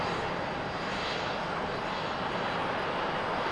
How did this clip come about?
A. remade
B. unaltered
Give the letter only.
B